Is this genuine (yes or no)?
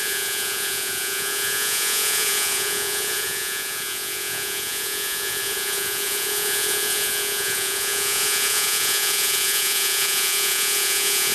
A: no